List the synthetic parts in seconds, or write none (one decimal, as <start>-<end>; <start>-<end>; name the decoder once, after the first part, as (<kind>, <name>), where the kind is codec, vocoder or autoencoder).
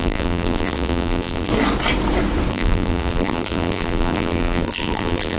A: 0.0-1.5 (vocoder, BigVGAN v2); 2.5-5.4